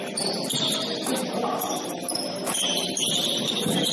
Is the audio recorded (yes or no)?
yes